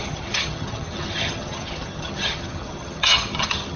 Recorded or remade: remade